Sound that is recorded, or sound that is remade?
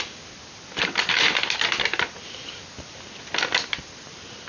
recorded